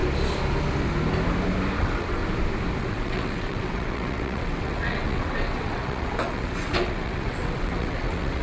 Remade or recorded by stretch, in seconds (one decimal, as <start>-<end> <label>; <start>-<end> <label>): 0.0-1.8 recorded; 1.8-2.2 remade; 2.2-2.8 recorded; 2.8-8.4 remade